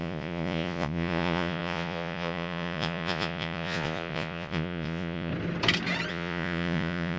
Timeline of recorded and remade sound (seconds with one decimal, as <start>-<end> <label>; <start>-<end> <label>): 0.0-5.3 remade; 5.3-6.1 recorded; 6.1-7.2 remade